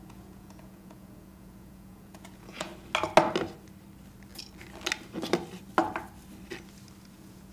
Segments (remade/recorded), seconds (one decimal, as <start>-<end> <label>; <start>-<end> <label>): 0.0-2.7 remade; 2.7-7.1 recorded; 7.1-7.5 remade